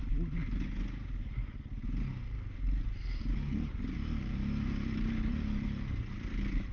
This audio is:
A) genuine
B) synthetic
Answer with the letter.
A